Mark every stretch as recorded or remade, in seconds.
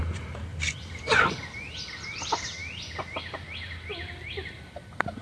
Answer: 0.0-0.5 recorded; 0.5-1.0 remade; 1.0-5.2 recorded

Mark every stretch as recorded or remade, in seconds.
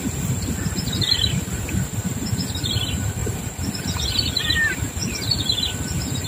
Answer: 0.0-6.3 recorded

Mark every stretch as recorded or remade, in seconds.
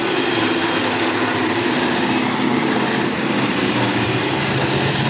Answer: 0.0-2.5 recorded; 2.5-5.1 remade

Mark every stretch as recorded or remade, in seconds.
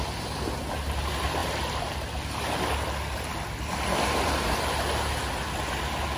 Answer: 0.0-6.2 recorded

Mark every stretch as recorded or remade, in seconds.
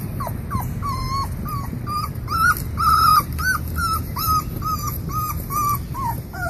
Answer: 0.0-6.5 recorded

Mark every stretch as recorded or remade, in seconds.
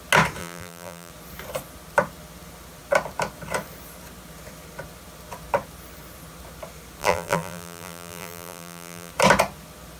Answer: 0.0-0.4 recorded; 0.4-1.1 remade; 1.1-7.0 recorded; 7.0-9.1 remade; 9.1-10.0 recorded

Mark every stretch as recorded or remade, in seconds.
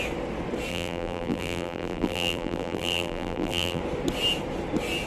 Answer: 0.0-0.7 recorded; 0.7-3.8 remade; 3.8-5.1 recorded